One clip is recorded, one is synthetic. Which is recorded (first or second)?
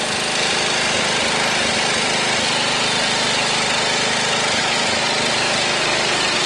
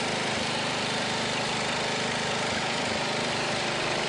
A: first